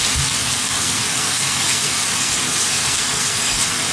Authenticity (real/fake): fake